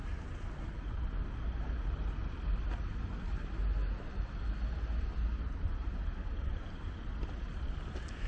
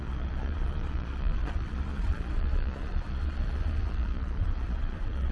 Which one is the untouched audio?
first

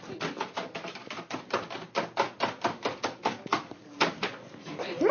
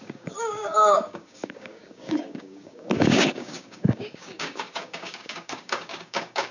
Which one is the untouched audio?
first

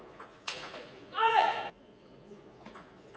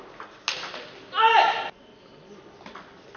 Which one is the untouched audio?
second